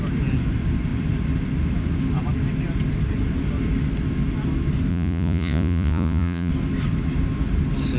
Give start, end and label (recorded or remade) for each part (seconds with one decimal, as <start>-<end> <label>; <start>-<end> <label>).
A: 0.0-4.9 recorded; 4.9-6.5 remade; 6.5-8.0 recorded